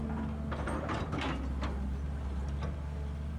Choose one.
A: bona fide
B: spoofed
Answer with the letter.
A